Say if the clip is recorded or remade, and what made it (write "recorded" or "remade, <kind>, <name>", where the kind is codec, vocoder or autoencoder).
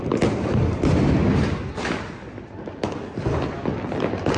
recorded